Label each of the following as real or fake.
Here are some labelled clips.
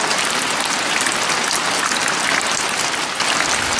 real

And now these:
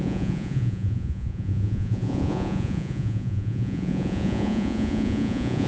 fake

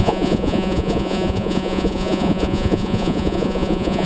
fake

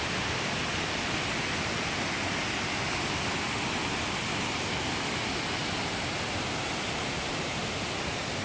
real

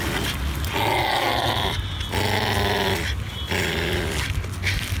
real